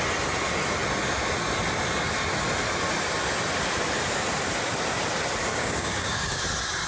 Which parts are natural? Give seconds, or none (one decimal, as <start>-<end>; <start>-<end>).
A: 0.0-5.5; 6.4-6.9